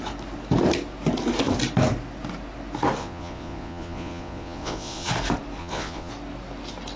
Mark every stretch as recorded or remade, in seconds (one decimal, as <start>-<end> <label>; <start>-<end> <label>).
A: 0.0-3.0 recorded; 3.0-5.1 remade; 5.1-5.6 recorded; 5.6-6.1 remade; 6.1-7.0 recorded